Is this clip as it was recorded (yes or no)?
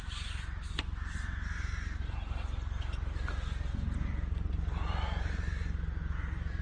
yes